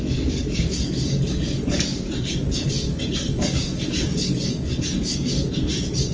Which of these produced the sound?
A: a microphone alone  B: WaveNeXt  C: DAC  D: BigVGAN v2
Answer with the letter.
C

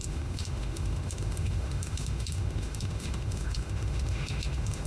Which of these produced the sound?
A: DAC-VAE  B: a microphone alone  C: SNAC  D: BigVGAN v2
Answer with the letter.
A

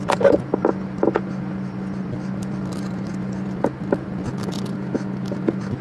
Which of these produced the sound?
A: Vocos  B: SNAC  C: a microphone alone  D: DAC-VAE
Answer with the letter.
C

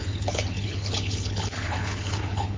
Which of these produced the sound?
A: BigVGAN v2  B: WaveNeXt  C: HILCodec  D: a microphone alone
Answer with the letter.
C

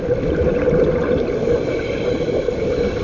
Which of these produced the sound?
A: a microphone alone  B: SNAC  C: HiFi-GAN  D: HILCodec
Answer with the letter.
A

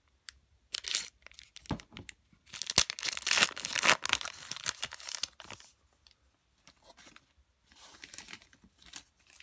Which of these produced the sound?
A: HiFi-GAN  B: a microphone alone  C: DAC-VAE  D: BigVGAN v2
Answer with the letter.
B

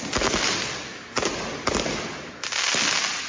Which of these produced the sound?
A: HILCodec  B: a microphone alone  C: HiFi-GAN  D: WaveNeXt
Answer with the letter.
B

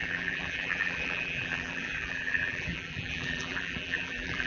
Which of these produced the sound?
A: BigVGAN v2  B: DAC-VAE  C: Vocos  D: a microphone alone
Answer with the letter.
A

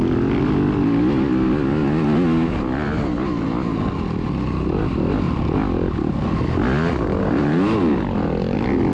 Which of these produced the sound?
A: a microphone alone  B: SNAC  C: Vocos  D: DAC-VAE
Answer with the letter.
A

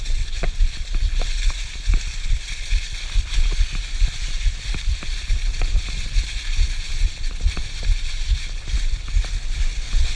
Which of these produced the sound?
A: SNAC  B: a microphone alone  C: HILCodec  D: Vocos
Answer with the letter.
B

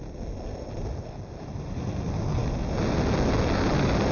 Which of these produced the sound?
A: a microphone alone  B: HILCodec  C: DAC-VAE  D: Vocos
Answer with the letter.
A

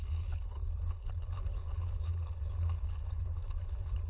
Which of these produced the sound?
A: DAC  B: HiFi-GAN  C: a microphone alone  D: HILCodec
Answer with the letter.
D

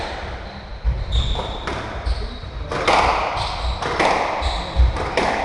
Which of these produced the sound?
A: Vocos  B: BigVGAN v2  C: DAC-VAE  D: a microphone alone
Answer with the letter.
B